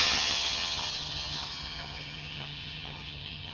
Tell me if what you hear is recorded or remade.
remade